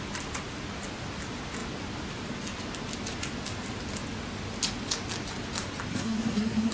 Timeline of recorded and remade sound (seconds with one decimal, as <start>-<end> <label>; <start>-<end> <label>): 0.0-5.9 recorded; 5.9-6.7 remade